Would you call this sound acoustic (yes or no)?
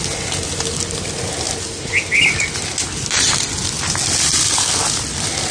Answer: yes